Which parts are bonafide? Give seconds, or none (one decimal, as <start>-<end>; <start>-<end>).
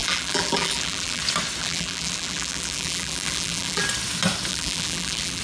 1.2-1.6; 3.8-4.5